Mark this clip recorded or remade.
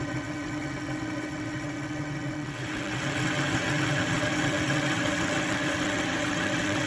remade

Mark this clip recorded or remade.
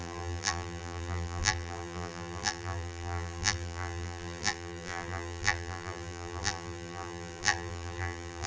remade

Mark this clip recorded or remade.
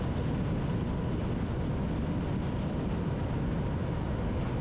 recorded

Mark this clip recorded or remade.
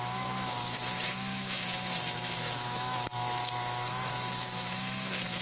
remade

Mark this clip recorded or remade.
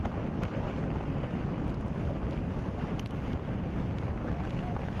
recorded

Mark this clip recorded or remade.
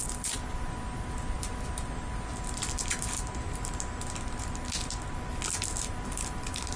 recorded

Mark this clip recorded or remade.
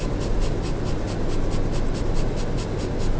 recorded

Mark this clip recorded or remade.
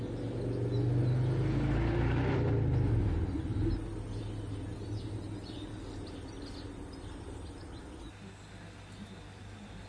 recorded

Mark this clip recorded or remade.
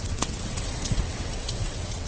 remade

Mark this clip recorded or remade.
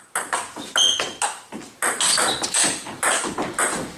recorded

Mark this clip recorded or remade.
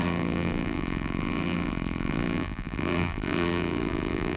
remade